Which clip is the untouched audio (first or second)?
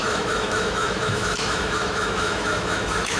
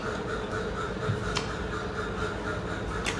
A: second